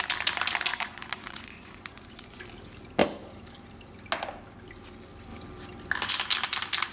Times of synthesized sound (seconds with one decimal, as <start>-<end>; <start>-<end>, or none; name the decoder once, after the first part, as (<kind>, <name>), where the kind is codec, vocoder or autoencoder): 0.7-2.4 (vocoder, Vocos)